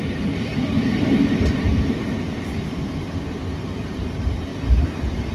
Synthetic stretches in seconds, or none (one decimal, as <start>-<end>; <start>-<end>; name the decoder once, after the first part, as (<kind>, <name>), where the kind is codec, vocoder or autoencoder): 0.0-4.5 (vocoder, BigVGAN v2)